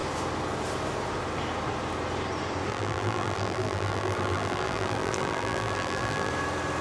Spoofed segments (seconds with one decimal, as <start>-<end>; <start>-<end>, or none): 2.7-6.3